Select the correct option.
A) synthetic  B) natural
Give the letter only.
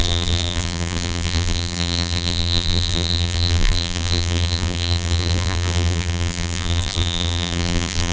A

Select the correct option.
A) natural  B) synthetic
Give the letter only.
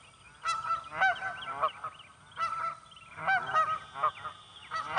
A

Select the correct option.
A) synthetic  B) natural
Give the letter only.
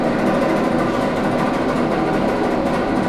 A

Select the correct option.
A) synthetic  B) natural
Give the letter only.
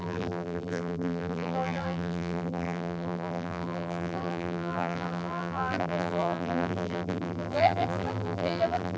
A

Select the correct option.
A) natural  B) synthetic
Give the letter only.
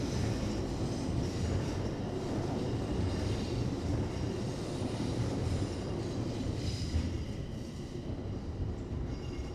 B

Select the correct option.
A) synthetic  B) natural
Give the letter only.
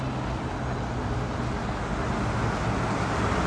B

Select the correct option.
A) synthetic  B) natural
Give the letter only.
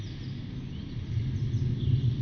B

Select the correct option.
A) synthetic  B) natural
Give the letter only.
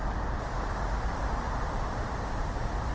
A